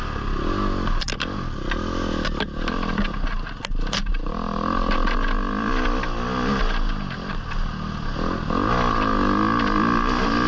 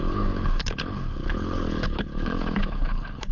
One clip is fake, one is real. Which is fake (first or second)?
second